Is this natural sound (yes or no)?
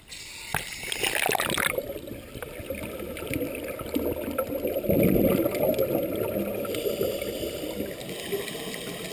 yes